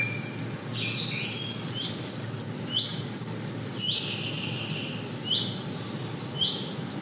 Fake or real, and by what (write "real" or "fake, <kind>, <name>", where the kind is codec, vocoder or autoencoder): real